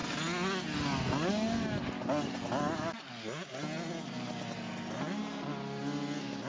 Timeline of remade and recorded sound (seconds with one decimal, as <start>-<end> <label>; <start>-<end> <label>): 0.0-6.5 recorded